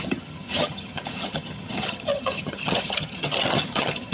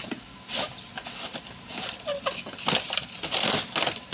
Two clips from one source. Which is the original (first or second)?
second